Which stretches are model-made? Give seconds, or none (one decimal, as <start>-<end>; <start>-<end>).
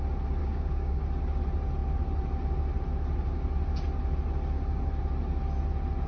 0.4-1.0